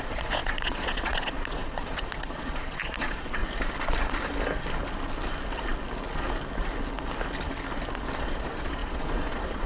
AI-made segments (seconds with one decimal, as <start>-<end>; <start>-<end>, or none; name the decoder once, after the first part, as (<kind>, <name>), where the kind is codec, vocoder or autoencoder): 0.0-3.4 (vocoder, Vocos); 8.2-9.7